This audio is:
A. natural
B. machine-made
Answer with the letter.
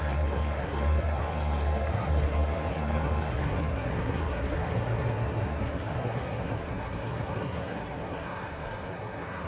B